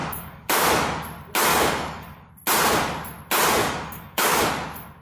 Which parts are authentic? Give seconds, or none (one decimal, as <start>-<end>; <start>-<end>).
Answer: 0.7-1.5; 2.3-3.6; 4.4-5.0